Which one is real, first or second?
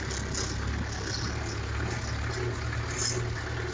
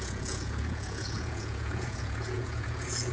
first